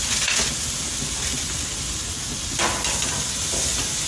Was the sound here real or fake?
real